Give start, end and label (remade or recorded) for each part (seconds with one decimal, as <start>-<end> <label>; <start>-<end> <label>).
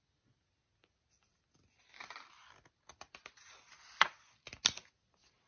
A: 0.0-5.5 recorded